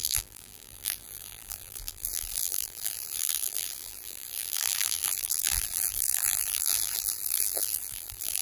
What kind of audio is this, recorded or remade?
remade